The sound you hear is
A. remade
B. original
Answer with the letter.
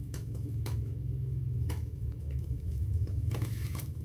A